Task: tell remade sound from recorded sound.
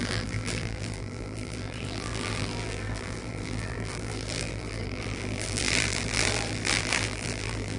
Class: remade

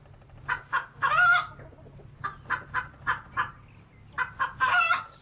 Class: recorded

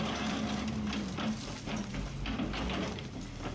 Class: recorded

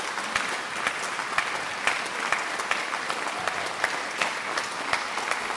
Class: recorded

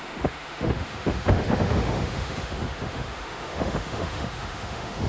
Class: remade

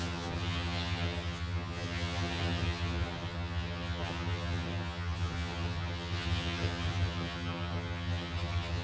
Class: remade